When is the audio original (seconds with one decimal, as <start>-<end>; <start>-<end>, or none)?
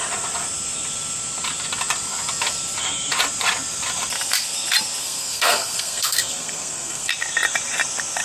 0.0-5.0; 7.1-8.2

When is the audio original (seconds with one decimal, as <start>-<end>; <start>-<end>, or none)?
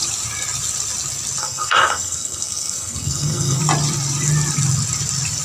0.0-1.4; 3.6-5.4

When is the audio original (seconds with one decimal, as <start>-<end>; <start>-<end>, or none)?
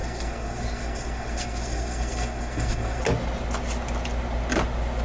3.0-5.0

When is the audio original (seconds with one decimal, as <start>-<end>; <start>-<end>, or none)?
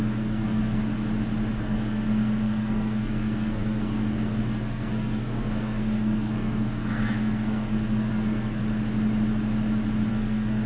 0.8-1.5; 8.6-10.1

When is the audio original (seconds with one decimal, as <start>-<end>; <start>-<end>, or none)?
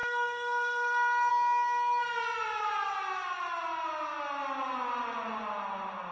1.3-6.1